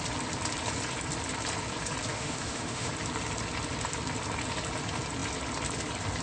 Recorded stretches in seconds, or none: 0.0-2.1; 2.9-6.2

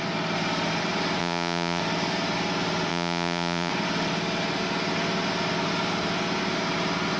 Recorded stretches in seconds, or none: 0.0-1.2; 1.8-2.9; 3.7-7.2

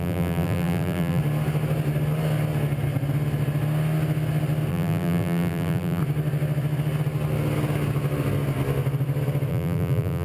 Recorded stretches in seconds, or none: 1.2-4.7; 6.0-9.5

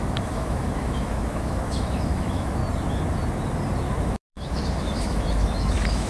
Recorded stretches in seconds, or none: 2.6-4.0

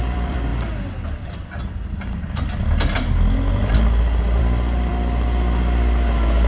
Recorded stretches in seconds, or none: 0.5-4.4; 4.9-6.5

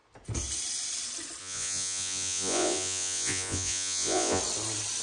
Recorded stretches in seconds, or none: 0.0-1.4; 4.4-5.0